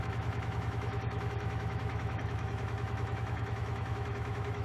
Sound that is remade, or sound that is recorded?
remade